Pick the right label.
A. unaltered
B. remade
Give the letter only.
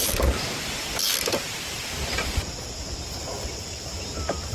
B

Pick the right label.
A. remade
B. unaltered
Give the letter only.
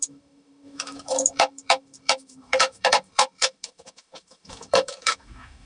A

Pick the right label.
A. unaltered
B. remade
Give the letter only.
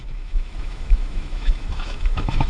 B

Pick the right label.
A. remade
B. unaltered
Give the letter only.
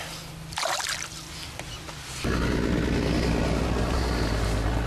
B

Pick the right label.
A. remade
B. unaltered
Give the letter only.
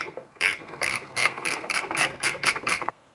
A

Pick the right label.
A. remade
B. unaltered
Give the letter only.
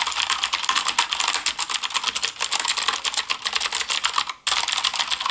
B